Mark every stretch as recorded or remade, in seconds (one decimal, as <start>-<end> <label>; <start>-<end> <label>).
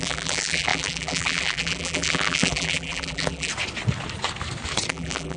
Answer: 0.0-3.5 remade; 3.5-4.9 recorded; 4.9-5.4 remade